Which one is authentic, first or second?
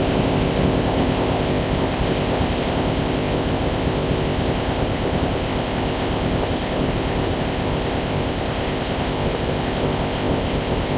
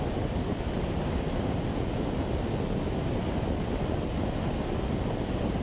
second